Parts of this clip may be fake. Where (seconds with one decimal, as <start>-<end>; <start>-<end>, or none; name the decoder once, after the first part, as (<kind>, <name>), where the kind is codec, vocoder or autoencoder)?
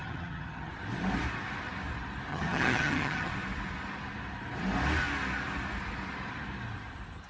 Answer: 0.0-0.7 (vocoder, HiFi-GAN); 2.3-3.3